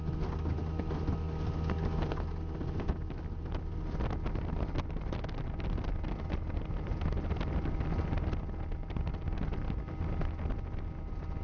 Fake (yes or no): no